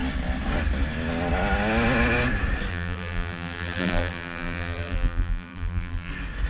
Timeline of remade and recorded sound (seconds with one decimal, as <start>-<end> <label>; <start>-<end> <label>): 0.0-2.7 recorded; 2.7-6.1 remade; 6.1-6.5 recorded